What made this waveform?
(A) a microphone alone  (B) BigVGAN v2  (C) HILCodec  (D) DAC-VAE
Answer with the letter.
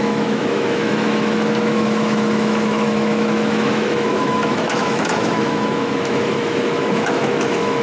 D